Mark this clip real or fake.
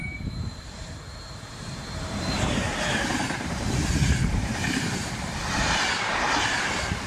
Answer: fake